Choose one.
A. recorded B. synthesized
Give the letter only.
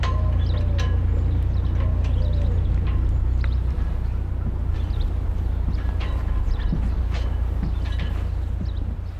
A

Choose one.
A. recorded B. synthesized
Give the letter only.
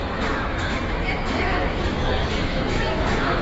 B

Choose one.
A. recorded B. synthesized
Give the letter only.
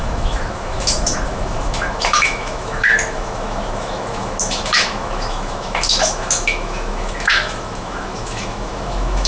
B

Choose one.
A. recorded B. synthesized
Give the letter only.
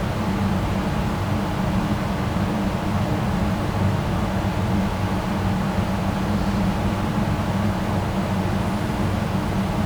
A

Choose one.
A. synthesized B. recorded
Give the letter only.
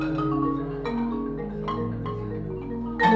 B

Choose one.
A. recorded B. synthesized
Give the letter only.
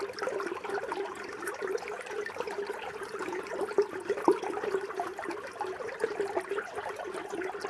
A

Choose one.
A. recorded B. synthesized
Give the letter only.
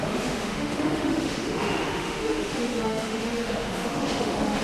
B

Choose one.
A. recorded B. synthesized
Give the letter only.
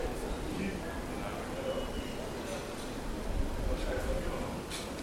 A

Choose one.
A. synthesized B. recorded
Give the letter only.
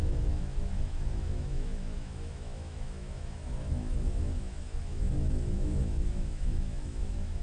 A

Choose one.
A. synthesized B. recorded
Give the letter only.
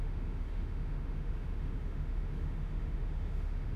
A